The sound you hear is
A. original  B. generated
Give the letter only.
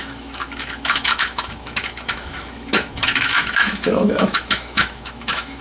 B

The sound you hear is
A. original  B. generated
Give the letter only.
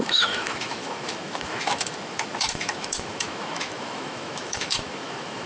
B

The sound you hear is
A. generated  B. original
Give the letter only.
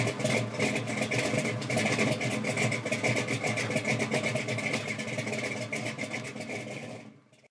B